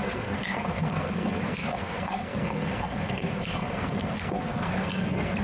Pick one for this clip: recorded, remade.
remade